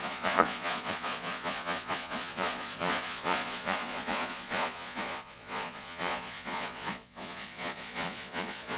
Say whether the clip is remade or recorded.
remade